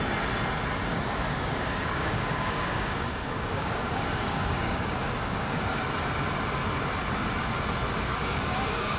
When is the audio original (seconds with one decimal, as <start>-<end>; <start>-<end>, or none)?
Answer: 0.0-0.9; 5.7-8.1